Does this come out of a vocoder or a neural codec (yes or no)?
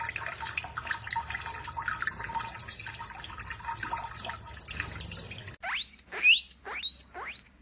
no